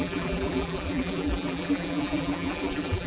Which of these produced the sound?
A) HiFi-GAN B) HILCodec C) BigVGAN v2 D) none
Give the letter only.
C